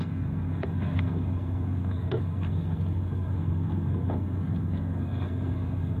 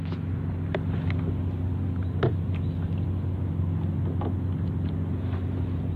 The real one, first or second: second